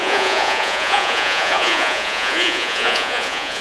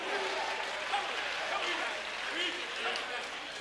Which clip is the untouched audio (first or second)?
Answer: second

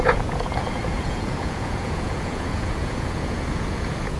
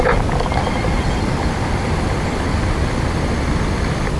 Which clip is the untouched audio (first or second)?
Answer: second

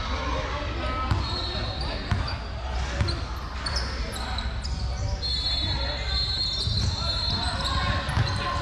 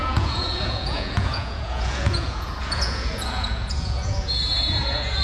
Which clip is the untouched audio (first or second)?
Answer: first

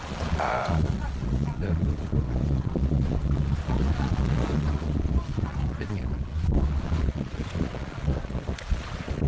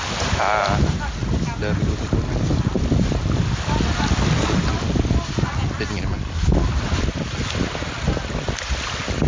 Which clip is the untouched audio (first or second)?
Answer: second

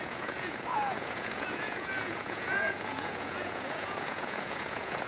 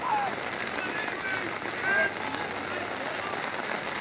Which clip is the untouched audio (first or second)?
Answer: second